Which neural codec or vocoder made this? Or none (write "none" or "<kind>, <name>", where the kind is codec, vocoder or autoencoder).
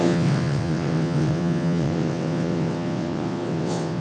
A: vocoder, WaveNeXt